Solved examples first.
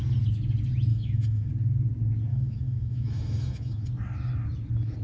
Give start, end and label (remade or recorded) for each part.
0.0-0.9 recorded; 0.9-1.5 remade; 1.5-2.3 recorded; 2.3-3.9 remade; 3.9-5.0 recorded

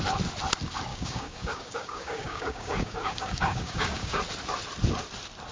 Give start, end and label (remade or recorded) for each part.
0.0-0.9 recorded; 0.9-4.2 remade; 4.2-5.5 recorded